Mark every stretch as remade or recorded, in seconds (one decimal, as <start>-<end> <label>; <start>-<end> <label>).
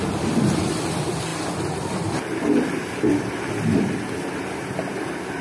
0.0-5.4 recorded